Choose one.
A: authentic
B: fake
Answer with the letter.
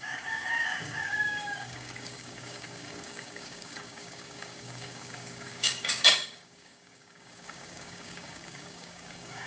B